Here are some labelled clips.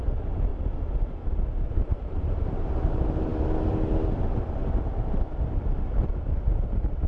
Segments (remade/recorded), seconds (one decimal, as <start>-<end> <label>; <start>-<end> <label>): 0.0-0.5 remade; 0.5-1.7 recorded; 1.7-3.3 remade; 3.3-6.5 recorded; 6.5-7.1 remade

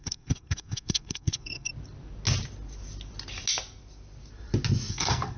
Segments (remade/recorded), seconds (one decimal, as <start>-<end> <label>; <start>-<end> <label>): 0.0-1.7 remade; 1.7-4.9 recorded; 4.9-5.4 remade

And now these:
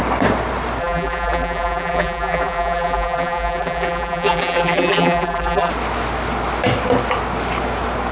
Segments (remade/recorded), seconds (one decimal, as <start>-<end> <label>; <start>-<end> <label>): 0.0-0.8 recorded; 0.8-5.7 remade; 5.7-8.1 recorded